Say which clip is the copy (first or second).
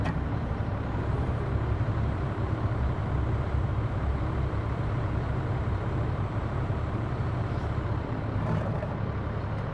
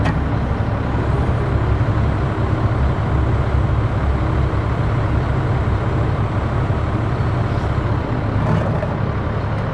first